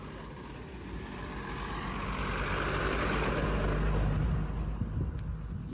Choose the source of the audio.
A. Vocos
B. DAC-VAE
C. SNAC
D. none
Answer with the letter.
D